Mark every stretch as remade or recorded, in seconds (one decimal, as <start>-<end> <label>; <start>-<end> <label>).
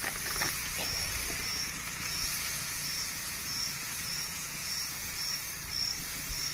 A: 0.0-1.5 recorded; 1.5-5.4 remade; 5.4-6.5 recorded